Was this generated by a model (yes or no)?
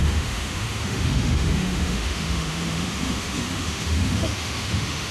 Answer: yes